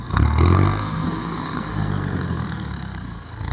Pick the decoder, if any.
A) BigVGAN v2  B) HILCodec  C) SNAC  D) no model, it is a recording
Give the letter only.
C